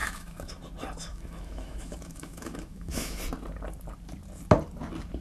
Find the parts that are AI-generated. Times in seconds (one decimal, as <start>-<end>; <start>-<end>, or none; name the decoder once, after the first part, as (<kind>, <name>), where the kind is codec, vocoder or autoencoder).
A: 0.0-0.6 (autoencoder, DAC-VAE); 1.1-3.2